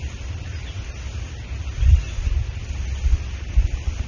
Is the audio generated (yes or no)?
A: no